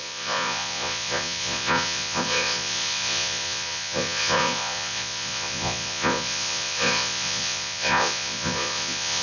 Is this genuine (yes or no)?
no